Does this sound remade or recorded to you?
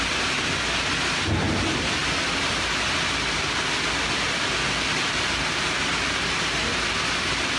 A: recorded